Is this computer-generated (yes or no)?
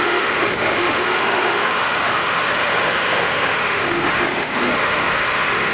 yes